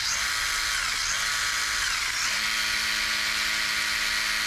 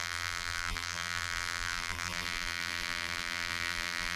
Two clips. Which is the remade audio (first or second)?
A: second